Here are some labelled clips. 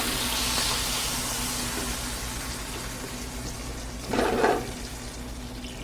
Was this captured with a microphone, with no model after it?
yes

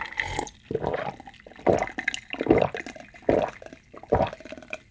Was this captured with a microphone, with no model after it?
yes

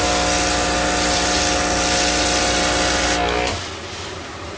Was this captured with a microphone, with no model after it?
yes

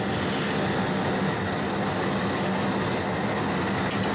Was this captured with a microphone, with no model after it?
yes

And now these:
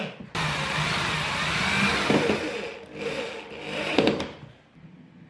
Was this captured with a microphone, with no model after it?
yes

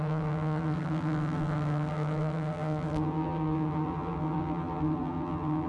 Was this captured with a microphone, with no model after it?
no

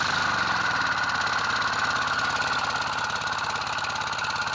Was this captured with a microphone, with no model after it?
yes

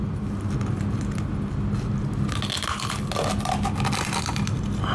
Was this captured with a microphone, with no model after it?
yes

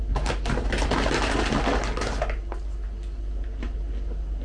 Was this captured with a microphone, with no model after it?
yes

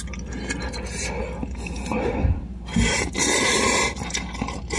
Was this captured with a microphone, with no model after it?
yes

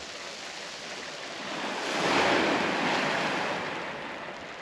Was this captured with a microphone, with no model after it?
yes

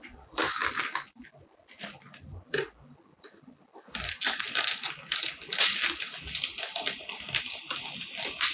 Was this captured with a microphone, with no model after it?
no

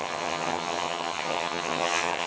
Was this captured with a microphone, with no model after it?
no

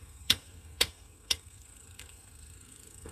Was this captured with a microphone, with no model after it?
no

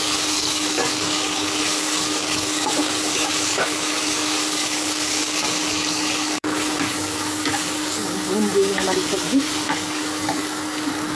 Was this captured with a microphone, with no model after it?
no